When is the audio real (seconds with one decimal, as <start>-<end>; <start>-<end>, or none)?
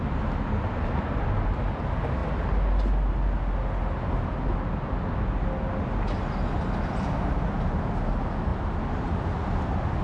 0.0-10.0